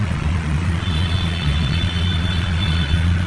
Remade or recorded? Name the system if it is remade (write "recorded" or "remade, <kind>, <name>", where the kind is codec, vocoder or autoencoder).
remade, vocoder, Vocos